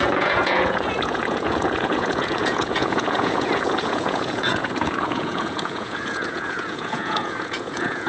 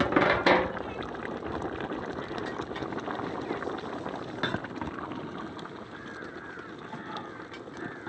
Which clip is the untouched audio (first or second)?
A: second